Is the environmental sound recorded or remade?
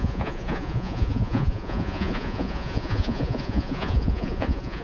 remade